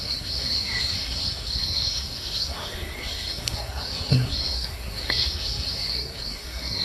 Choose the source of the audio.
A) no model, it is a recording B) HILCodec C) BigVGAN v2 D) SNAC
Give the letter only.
D